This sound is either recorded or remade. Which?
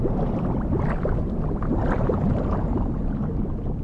recorded